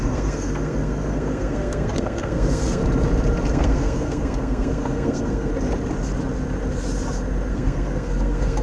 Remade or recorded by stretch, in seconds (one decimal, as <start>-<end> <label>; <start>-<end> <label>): 0.0-2.8 remade; 2.8-3.5 recorded; 3.5-5.5 remade; 5.5-7.5 recorded; 7.5-8.6 remade